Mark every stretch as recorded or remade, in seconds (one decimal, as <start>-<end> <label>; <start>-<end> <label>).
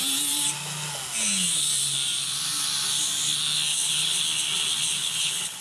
0.0-3.7 recorded; 3.7-4.2 remade; 4.2-5.0 recorded; 5.0-5.6 remade